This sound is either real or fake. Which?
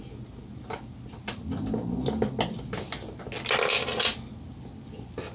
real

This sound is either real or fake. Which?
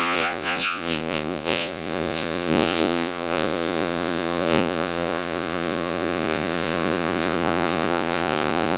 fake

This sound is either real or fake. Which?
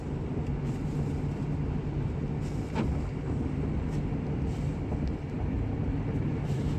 real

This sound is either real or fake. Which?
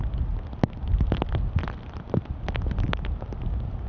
real